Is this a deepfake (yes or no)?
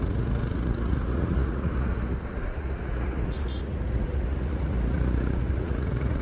yes